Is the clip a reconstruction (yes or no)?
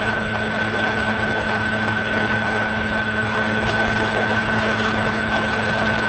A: yes